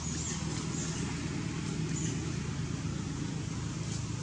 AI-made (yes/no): no